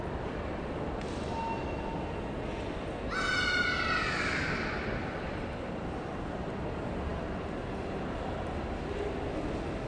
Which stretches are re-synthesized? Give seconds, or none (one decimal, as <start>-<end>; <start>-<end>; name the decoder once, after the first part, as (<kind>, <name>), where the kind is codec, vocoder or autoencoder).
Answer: none

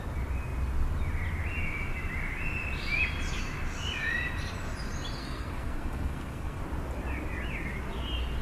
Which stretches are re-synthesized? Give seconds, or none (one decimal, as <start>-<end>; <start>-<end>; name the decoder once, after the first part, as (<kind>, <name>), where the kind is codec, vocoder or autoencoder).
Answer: 5.2-6.6 (codec, SNAC)

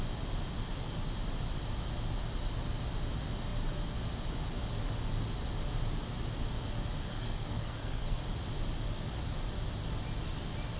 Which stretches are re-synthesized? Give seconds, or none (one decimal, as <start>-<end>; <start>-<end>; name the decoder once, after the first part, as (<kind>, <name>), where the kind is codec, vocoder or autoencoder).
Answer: 7.1-8.2 (codec, SNAC)

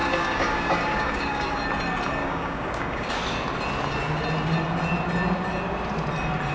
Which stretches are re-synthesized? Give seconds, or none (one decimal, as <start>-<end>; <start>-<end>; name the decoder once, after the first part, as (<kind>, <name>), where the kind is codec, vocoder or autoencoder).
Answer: 0.0-1.6 (codec, DAC); 2.2-3.1

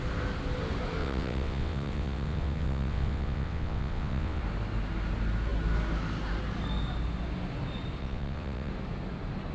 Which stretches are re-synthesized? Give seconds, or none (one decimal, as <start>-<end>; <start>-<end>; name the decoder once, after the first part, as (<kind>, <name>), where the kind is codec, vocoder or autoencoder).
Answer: 1.0-4.4 (vocoder, WaveNeXt); 8.0-8.7

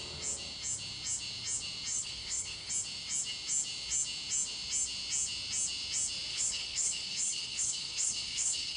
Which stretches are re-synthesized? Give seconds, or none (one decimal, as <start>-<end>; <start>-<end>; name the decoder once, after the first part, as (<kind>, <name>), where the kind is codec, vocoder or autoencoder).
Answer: 1.9-2.7 (codec, HILCodec); 6.3-8.8

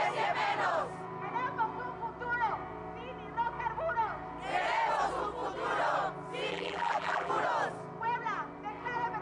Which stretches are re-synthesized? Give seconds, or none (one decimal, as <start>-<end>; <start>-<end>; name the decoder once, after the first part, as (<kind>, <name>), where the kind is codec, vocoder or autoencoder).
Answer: 6.5-7.3 (vocoder, BigVGAN v2)

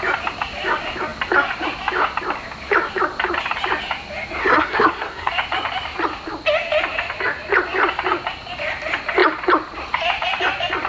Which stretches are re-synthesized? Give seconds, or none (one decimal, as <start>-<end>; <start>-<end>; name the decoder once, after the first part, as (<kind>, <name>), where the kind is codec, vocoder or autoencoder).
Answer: 4.4-5.3 (codec, SNAC)